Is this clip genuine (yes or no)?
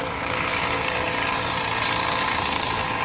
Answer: no